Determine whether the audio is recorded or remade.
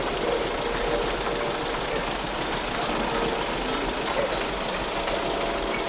recorded